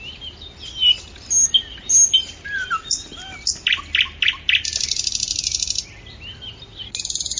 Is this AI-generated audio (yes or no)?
no